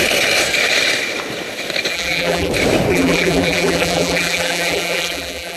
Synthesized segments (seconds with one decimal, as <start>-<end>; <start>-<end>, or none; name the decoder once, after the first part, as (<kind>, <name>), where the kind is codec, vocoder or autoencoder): 1.9-2.5 (vocoder, BigVGAN v2); 2.9-5.6